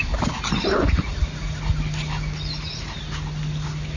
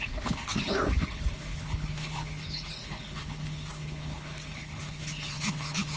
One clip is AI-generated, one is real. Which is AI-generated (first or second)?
second